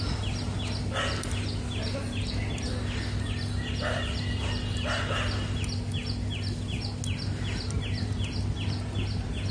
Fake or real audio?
real